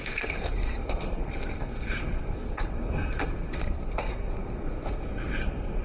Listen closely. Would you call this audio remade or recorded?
remade